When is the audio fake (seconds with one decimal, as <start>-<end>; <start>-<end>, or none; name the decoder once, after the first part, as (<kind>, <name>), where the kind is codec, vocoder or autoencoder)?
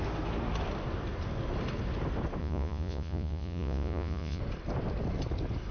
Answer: 2.4-4.4 (vocoder, Vocos)